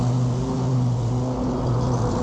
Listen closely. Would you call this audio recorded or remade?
recorded